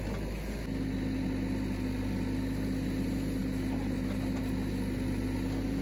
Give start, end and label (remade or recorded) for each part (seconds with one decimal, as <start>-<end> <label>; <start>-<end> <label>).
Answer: 0.0-5.8 recorded